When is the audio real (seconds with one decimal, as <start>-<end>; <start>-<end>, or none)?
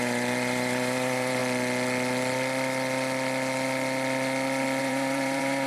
1.4-4.8